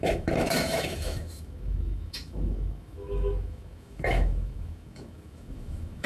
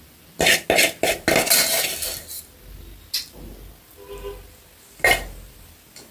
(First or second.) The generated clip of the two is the first